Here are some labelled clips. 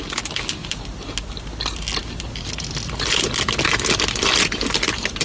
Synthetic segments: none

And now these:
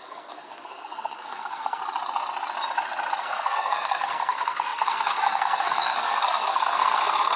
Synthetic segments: 0.0-1.8 (codec, SNAC); 3.2-7.4